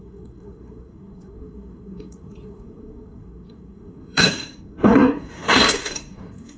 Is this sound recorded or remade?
remade